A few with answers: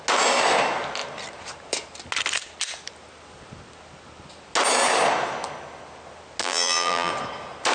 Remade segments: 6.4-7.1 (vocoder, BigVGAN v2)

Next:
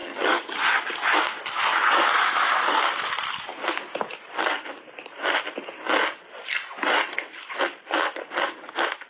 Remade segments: 0.0-0.8 (vocoder, HiFi-GAN)

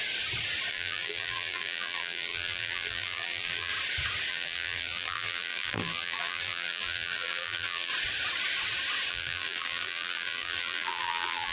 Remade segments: 0.7-3.7 (vocoder, BigVGAN v2); 4.3-7.9; 9.1-11.5

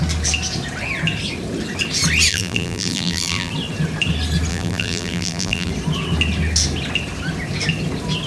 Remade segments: 2.3-3.5 (vocoder, BigVGAN v2); 4.5-5.7

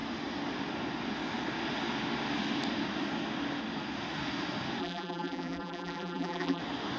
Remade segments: 4.8-6.6 (vocoder, BigVGAN v2)

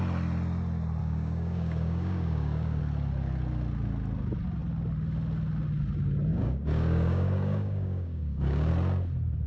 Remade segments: 1.0-2.8 (codec, DAC); 6.3-8.7